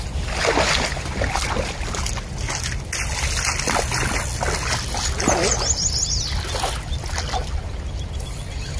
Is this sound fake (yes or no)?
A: no